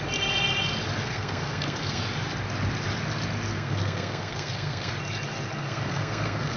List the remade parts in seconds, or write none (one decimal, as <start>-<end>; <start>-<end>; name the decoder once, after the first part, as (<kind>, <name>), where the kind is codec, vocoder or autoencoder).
1.0-2.0 (codec, SNAC); 3.5-4.9; 5.6-6.6